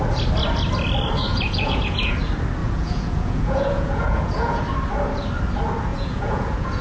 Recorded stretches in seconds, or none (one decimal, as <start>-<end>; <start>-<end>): 0.0-1.3; 2.1-2.6; 4.6-5.9